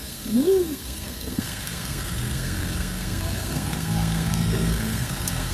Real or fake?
fake